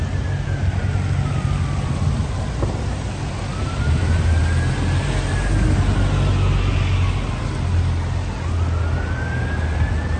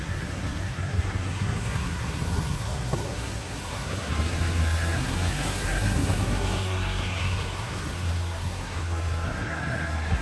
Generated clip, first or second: second